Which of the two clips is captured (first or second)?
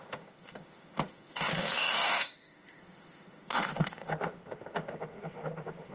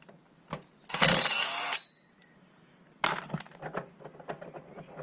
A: second